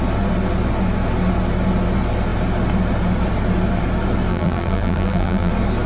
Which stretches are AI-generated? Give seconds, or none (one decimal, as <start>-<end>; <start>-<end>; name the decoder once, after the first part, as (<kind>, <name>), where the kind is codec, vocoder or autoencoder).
4.3-5.5 (vocoder, BigVGAN v2)